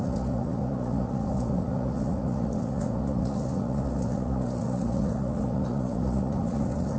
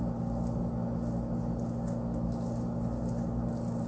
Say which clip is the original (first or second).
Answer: second